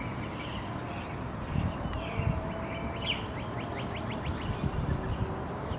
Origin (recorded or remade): recorded